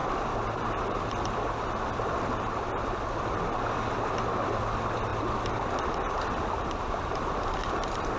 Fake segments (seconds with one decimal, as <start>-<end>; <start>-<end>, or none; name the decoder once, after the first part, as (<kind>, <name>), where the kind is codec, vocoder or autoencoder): 0.0-8.2 (vocoder, BigVGAN v2)